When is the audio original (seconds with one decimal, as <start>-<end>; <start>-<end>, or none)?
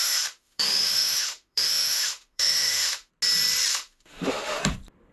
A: 3.1-3.7; 4.6-5.1